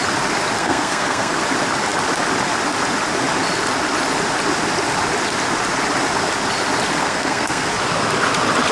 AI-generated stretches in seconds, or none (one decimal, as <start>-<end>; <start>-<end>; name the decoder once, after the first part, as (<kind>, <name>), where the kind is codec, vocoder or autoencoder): 0.6-1.4 (codec, SNAC); 7.0-7.7